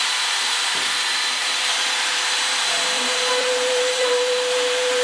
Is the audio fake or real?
fake